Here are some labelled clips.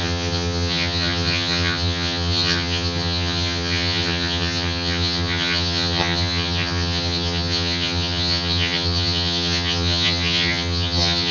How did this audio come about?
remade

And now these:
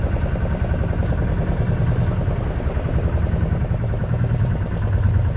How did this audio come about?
recorded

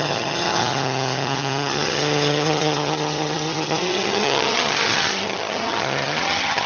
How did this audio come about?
remade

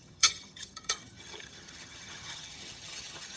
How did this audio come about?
remade